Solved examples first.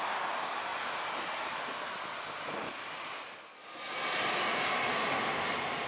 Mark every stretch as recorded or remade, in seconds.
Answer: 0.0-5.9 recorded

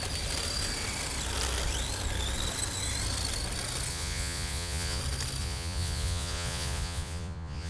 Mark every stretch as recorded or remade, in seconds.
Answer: 0.0-3.9 recorded; 3.9-5.0 remade; 5.0-5.4 recorded; 5.4-7.7 remade

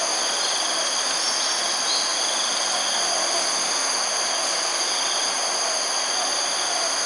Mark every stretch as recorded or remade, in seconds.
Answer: 0.0-7.1 recorded

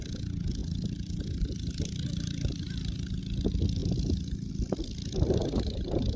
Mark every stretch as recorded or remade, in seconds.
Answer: 0.0-0.6 recorded; 0.6-3.2 remade; 3.2-3.8 recorded; 3.8-4.5 remade; 4.5-5.4 recorded; 5.4-6.2 remade

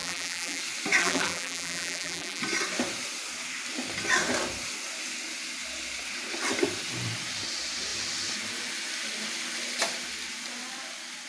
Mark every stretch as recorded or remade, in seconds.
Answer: 0.0-0.6 remade; 0.6-1.0 recorded; 1.0-2.4 remade; 2.4-11.3 recorded

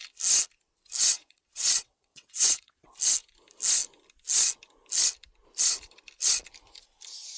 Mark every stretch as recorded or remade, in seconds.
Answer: 0.0-1.1 recorded; 1.1-2.9 remade; 2.9-7.4 recorded